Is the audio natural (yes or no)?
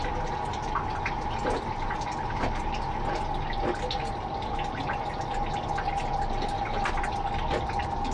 yes